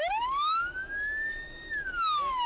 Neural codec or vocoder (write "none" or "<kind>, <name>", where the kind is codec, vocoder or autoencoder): autoencoder, DAC-VAE